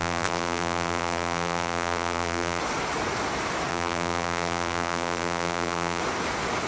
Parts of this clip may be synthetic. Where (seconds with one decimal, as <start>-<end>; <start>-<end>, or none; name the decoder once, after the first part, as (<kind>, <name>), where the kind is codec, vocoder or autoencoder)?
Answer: 0.0-2.6 (vocoder, BigVGAN v2); 3.7-6.0